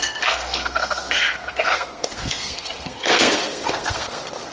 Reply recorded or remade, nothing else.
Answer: remade